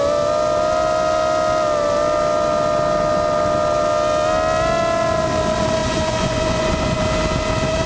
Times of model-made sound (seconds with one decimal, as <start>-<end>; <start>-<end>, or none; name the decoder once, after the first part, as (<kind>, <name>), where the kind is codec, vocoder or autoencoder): 5.8-7.0 (vocoder, Vocos)